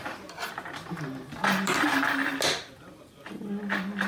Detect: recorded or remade recorded